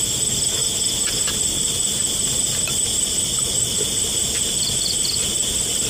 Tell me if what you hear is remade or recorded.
recorded